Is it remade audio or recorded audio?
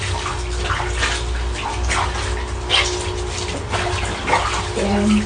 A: recorded